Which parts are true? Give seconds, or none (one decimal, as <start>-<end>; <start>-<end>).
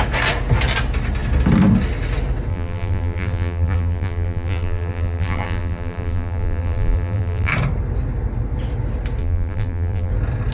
0.0-2.5; 7.5-9.2; 10.1-10.5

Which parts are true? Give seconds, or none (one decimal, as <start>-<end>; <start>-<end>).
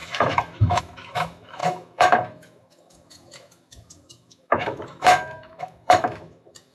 none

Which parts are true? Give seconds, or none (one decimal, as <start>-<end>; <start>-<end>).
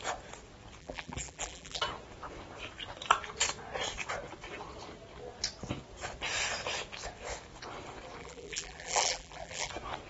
0.0-0.8; 1.8-8.2; 9.7-10.1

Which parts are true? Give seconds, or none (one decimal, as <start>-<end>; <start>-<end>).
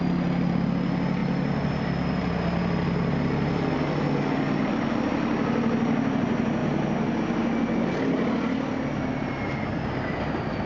0.0-10.7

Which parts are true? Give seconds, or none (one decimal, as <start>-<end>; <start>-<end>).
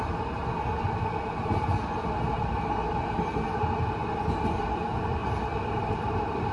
0.4-4.3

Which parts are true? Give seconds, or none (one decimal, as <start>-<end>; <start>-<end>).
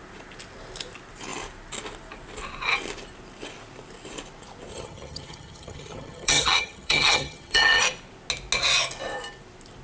0.0-4.7; 7.8-9.8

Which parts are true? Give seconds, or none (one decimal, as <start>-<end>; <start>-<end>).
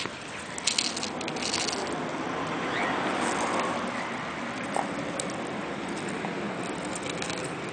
0.0-7.7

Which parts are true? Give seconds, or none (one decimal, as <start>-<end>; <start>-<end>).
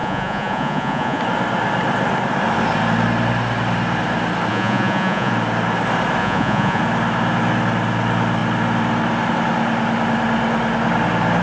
1.2-4.5; 5.3-6.2; 6.8-11.4